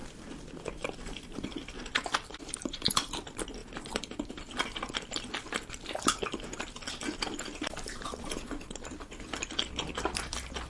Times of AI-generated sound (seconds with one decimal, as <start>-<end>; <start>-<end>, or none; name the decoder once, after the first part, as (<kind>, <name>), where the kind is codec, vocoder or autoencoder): none